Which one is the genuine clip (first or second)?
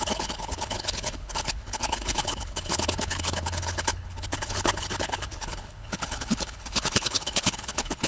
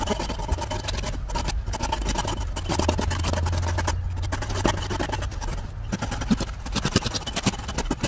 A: second